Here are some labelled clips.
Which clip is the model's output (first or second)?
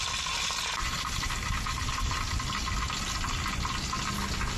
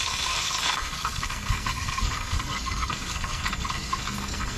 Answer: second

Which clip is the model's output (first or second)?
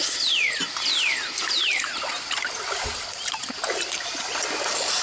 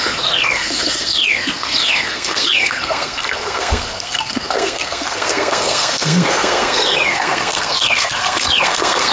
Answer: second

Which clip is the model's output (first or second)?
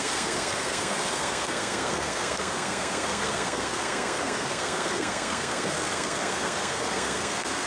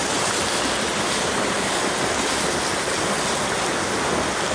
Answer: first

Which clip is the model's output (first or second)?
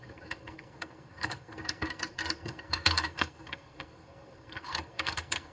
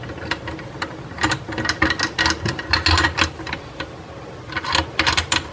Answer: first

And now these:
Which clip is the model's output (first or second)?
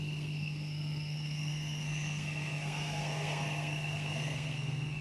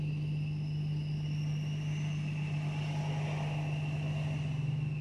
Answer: first